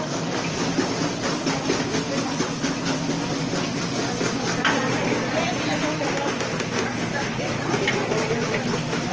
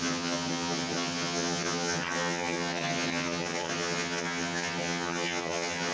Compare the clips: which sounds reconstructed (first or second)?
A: second